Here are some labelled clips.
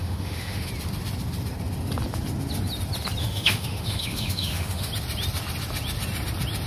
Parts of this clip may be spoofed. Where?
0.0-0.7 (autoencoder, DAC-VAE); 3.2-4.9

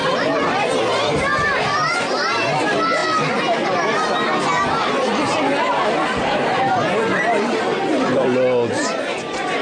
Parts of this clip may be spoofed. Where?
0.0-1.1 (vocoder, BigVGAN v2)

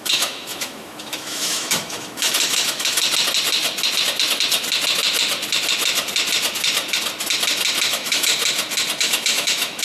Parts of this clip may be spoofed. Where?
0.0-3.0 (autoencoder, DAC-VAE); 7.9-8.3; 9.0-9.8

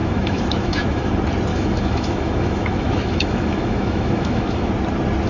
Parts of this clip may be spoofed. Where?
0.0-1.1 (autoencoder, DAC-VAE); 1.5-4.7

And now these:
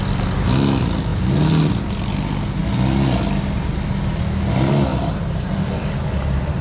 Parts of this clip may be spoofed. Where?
4.9-5.5 (vocoder, BigVGAN v2)

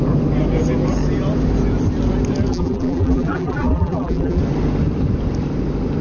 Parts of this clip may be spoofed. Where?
2.5-4.4 (vocoder, BigVGAN v2)

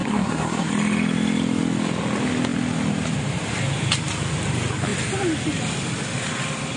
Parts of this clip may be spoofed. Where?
0.0-0.7 (codec, SNAC)